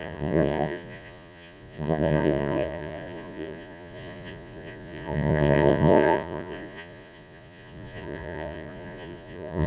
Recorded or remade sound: remade